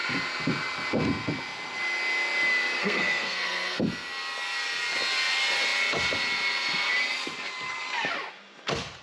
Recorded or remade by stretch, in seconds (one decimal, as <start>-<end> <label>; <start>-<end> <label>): 0.0-2.8 recorded; 2.8-3.8 remade; 3.8-9.0 recorded